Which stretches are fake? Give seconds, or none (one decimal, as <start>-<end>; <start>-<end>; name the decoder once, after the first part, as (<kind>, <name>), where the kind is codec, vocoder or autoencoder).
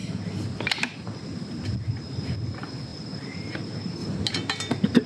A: 2.9-3.6 (vocoder, BigVGAN v2)